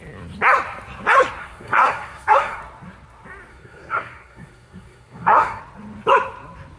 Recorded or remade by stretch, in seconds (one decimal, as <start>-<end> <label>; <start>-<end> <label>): 0.0-1.4 recorded; 1.4-2.6 remade; 2.6-3.5 recorded; 3.5-5.6 remade; 5.6-6.8 recorded